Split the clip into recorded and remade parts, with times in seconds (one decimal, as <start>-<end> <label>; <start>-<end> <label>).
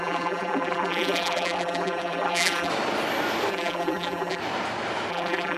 0.0-2.7 remade; 2.7-3.5 recorded; 3.5-4.4 remade; 4.4-5.1 recorded; 5.1-5.6 remade